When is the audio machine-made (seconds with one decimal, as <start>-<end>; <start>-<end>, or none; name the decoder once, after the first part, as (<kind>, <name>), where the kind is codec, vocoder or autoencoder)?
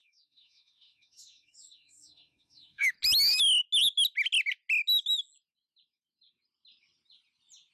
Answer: 0.0-2.9 (autoencoder, DAC-VAE)